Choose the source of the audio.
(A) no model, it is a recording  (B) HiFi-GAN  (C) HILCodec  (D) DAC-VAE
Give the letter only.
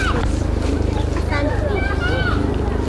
A